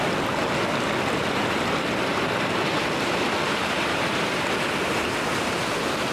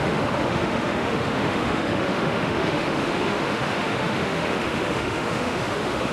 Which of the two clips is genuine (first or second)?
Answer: first